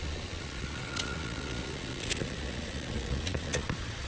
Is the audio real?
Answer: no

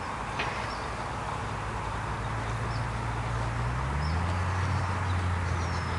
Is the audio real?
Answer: yes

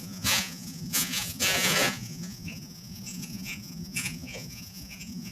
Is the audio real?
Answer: no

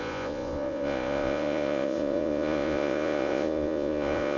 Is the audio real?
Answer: no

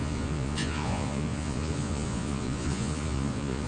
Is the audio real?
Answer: no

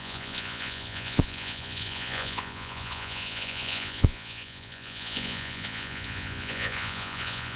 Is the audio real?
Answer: no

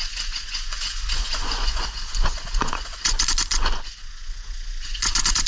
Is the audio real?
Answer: no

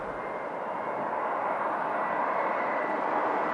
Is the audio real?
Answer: yes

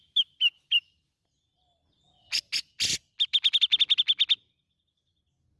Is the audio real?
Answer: yes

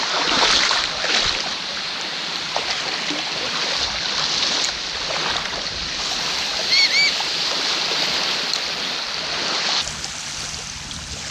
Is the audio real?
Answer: yes